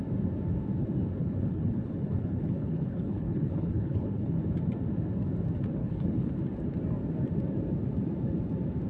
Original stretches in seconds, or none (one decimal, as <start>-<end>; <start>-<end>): 0.0-1.2; 4.4-5.8; 6.3-8.9